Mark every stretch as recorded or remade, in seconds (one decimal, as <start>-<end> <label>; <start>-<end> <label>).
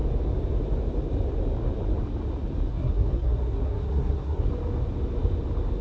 0.0-2.7 recorded; 2.7-4.5 remade; 4.5-5.8 recorded